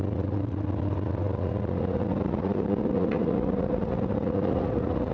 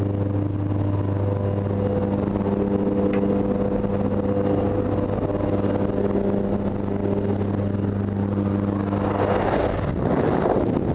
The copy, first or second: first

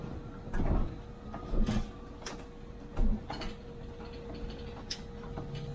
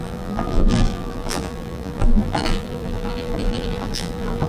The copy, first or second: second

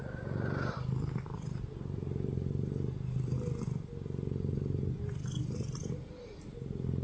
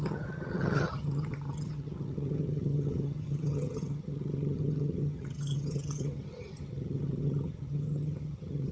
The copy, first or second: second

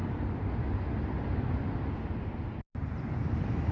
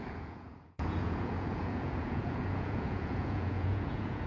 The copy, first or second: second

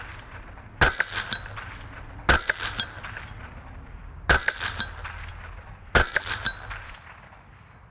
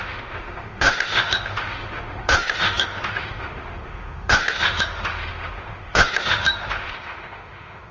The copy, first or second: second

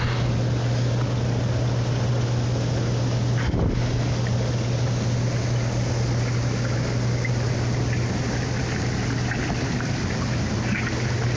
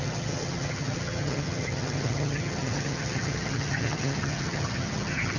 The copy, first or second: second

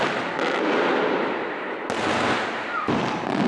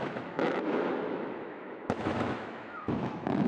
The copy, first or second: second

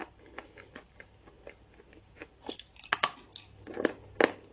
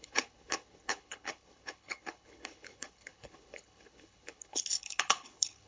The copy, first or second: second